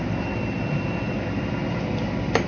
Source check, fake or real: fake